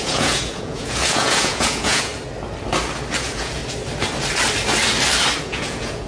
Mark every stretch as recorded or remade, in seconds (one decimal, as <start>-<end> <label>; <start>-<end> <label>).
0.0-2.1 remade; 2.1-3.2 recorded; 3.2-3.6 remade; 3.6-5.4 recorded; 5.4-6.1 remade